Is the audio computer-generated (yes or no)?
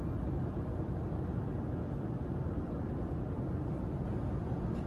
no